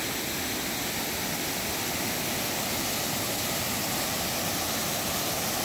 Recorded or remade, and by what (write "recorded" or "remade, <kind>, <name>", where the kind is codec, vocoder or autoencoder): recorded